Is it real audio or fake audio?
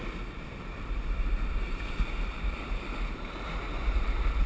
fake